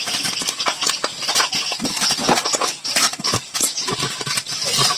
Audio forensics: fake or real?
real